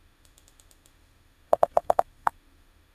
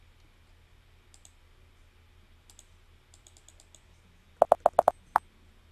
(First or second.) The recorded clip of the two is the second